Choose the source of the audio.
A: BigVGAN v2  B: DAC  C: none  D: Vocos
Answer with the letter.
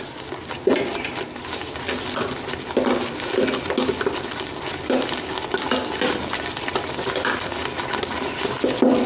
C